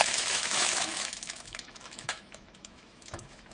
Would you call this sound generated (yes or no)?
yes